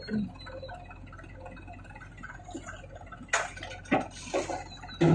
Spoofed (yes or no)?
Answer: no